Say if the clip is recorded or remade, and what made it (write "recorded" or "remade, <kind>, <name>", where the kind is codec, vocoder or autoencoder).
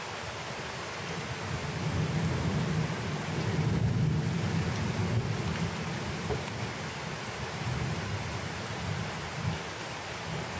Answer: recorded